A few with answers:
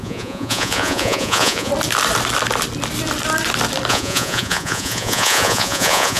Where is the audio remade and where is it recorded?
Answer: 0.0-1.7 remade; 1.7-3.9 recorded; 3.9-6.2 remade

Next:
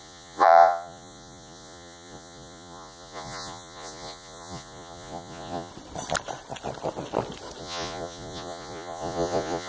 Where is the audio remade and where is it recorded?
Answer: 0.0-5.7 remade; 5.7-7.6 recorded; 7.6-9.7 remade